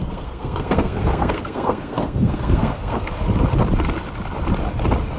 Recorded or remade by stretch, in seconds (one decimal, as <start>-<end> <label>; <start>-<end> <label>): 0.0-3.1 remade; 3.1-5.2 recorded